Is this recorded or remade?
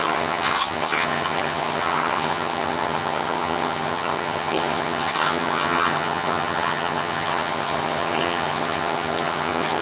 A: remade